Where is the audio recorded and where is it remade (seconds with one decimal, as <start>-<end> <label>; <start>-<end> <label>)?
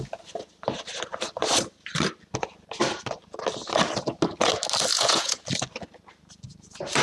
0.0-4.9 recorded; 4.9-5.4 remade; 5.4-7.0 recorded